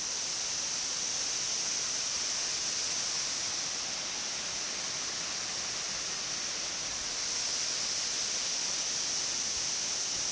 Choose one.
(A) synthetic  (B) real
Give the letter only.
B